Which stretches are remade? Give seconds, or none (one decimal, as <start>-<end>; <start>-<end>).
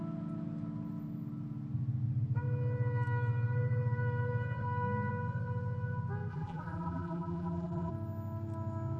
6.3-7.9